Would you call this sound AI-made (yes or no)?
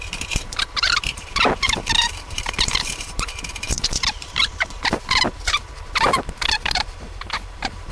yes